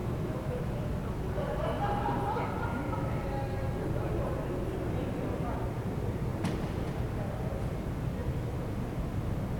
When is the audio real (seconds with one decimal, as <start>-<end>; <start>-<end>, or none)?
0.6-6.3; 7.0-9.6